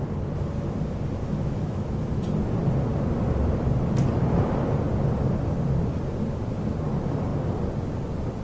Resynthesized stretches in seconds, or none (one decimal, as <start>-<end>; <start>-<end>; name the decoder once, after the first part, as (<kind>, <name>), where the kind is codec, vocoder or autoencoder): 1.2-2.1 (autoencoder, DAC-VAE)